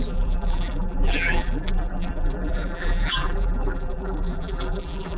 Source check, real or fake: fake